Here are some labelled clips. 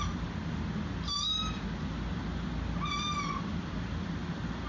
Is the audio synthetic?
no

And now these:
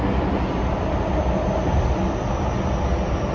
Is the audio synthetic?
no